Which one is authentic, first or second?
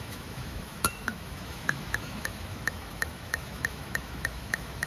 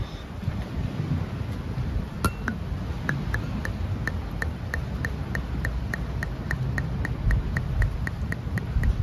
second